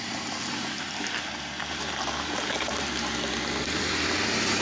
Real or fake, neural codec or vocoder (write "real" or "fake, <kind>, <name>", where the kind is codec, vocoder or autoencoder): real